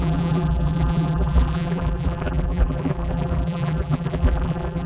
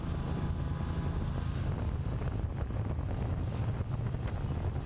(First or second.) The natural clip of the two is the second